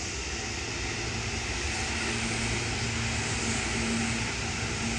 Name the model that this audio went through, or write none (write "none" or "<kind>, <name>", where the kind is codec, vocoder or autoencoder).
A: none